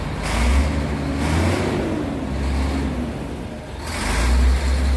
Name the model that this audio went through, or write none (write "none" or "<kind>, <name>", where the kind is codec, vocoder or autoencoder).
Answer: none